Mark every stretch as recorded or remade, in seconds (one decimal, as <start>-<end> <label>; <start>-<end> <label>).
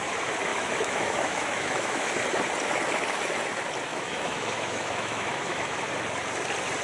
0.0-0.5 recorded; 0.5-2.1 remade; 2.1-3.9 recorded; 3.9-5.8 remade; 5.8-6.8 recorded